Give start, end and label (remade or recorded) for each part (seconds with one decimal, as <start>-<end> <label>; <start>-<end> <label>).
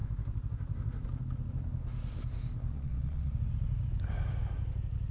0.0-2.7 recorded; 2.7-3.3 remade; 3.3-5.1 recorded